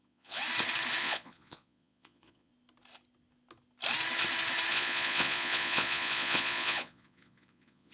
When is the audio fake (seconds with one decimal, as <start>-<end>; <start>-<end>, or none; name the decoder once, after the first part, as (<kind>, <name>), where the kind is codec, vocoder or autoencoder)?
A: 0.0-0.4 (vocoder, Vocos); 1.0-2.5; 4.7-7.9

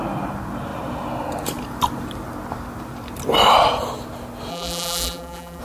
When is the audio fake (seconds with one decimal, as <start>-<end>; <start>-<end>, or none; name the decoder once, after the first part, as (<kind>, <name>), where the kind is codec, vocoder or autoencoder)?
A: 4.5-5.6 (vocoder, BigVGAN v2)

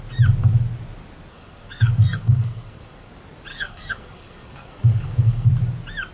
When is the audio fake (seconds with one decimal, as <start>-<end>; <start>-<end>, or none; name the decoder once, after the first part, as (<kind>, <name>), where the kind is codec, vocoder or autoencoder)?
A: 1.3-3.1 (codec, SNAC); 3.5-5.5

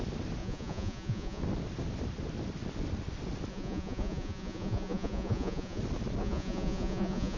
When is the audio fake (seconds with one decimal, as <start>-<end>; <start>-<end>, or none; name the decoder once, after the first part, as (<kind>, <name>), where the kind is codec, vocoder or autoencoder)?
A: 0.4-1.4 (vocoder, Vocos); 3.5-5.8; 6.2-7.4

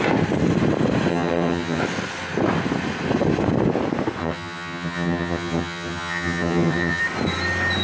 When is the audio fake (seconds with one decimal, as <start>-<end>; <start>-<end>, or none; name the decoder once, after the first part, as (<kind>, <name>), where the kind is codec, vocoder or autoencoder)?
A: 1.1-1.8 (vocoder, HiFi-GAN); 4.2-7.0

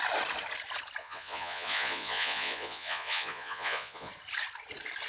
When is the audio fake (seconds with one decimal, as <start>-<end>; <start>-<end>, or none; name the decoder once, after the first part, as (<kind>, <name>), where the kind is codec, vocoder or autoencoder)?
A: 1.0-4.1 (vocoder, Vocos)

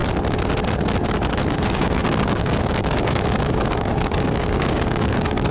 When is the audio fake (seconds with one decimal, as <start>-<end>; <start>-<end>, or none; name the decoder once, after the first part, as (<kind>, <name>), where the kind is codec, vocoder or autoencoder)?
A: 1.5-5.5 (codec, DAC)